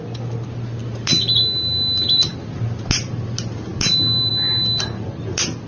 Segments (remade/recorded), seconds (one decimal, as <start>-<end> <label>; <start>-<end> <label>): 0.0-5.7 recorded